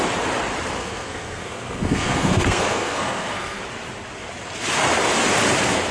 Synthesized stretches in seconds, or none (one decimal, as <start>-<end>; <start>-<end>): 0.8-3.6